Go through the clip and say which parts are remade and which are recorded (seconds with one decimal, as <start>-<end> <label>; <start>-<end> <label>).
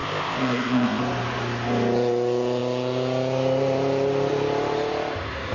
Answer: 0.0-1.0 remade; 1.0-5.5 recorded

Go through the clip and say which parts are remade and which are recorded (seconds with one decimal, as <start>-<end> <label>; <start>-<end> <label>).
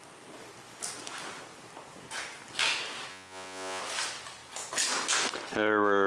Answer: 0.0-3.1 recorded; 3.1-3.8 remade; 3.8-6.1 recorded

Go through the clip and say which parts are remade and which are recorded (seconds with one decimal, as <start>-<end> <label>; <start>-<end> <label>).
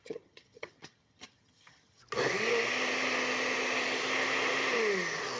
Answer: 0.0-2.0 remade; 2.0-5.4 recorded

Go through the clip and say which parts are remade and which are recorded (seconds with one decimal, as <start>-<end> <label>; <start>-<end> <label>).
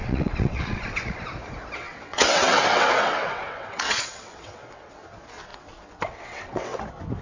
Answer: 0.0-1.2 remade; 1.2-1.8 recorded; 1.8-5.0 remade; 5.0-5.5 recorded; 5.5-6.8 remade; 6.8-7.2 recorded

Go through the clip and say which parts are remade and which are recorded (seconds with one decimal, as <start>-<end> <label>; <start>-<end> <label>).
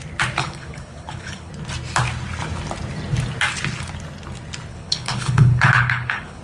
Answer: 0.0-0.4 recorded; 0.4-1.5 remade; 1.5-4.7 recorded; 4.7-6.4 remade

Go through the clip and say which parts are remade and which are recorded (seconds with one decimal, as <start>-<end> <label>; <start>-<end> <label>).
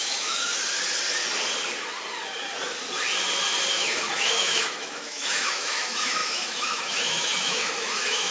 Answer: 0.0-0.5 remade; 0.5-3.7 recorded; 3.7-8.3 remade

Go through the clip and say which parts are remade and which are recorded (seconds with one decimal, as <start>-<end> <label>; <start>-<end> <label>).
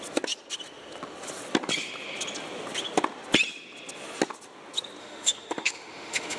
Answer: 0.0-5.0 recorded; 5.0-6.4 remade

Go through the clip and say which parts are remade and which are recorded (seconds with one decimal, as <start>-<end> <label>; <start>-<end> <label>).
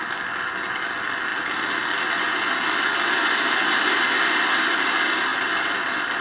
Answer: 0.0-6.2 recorded